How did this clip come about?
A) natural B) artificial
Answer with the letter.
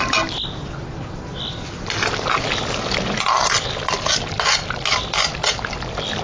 A